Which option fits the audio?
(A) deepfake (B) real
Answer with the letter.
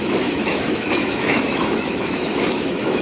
A